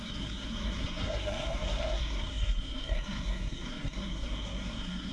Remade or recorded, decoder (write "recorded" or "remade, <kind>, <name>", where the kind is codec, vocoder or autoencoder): remade, codec, SNAC